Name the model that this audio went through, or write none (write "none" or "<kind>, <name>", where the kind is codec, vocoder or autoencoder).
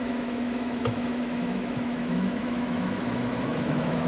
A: autoencoder, DAC-VAE